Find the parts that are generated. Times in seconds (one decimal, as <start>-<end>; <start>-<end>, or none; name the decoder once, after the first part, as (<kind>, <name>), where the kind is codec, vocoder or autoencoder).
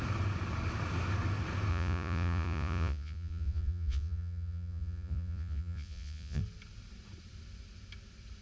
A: 1.7-6.4 (vocoder, Vocos)